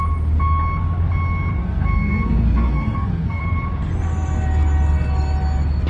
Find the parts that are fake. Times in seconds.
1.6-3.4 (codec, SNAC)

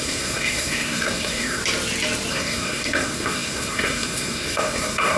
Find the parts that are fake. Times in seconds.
0.0-1.6 (codec, SNAC); 2.3-5.2

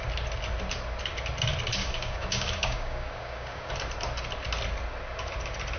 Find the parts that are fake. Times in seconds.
1.8-3.7 (codec, DAC)

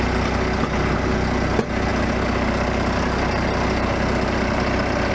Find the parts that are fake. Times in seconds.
none

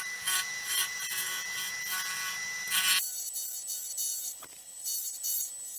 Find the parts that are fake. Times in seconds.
4.1-5.2 (vocoder, BigVGAN v2)

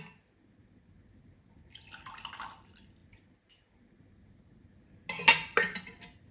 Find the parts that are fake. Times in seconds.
none